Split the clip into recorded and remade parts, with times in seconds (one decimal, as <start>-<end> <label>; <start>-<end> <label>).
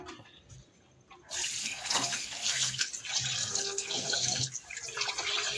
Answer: 0.0-1.6 recorded; 1.6-2.9 remade; 2.9-3.4 recorded; 3.4-4.5 remade; 4.5-5.6 recorded